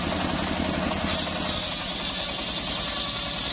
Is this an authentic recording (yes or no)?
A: yes